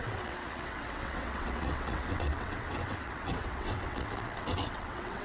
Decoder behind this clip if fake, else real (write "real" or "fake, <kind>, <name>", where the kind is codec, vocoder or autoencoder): fake, vocoder, WaveNeXt